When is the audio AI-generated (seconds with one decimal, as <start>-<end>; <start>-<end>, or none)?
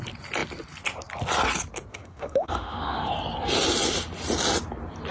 1.9-3.1